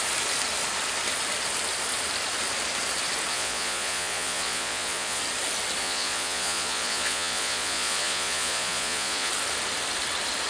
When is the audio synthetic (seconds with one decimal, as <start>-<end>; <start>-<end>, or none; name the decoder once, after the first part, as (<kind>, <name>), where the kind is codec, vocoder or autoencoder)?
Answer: 3.3-5.2 (vocoder, Vocos); 5.8-9.3